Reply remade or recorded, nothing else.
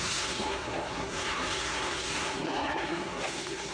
remade